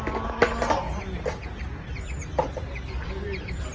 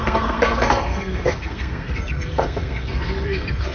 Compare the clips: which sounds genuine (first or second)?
first